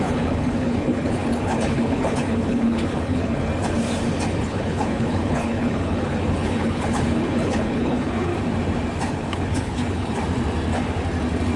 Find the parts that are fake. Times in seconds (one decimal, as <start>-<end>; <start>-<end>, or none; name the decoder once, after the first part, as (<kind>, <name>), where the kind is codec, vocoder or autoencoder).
0.0-3.5 (codec, HILCodec); 4.4-8.3; 9.1-10.2